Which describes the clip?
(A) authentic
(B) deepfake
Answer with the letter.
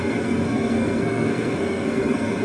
B